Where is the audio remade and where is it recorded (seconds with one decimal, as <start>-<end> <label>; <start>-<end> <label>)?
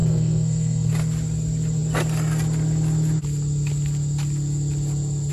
0.0-0.9 remade; 0.9-5.3 recorded